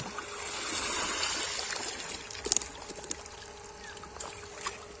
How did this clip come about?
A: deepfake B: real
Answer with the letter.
B